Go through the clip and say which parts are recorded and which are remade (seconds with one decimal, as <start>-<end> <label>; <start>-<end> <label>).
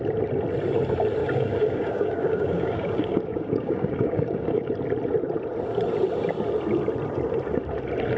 0.0-1.2 recorded; 1.2-4.7 remade; 4.7-8.2 recorded